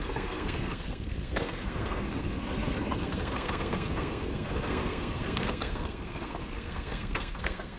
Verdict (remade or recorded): remade